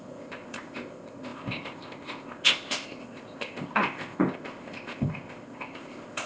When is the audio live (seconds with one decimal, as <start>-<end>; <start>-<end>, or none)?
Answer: none